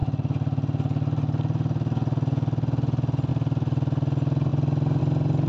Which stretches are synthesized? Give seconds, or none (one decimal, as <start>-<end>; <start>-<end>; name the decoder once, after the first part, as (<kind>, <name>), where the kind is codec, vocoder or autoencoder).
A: none